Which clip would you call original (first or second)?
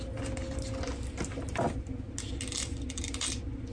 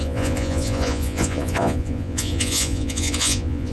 first